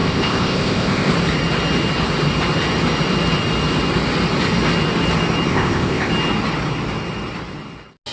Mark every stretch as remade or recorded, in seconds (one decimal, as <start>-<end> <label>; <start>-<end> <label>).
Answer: 0.0-1.1 remade; 1.1-5.5 recorded; 5.5-6.1 remade; 6.1-8.1 recorded